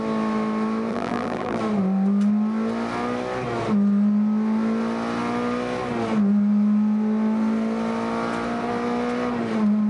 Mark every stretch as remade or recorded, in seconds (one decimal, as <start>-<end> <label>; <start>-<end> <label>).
0.0-0.9 recorded; 0.9-1.6 remade; 1.6-9.9 recorded